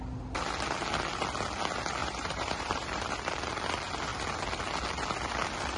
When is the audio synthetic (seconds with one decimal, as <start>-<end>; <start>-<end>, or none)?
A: 2.0-3.1

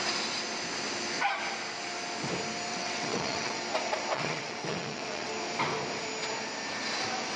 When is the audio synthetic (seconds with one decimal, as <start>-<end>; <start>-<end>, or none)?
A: 2.7-3.6; 4.1-5.3

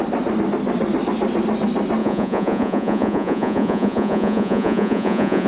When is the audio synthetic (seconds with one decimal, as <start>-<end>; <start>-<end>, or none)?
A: 2.0-5.5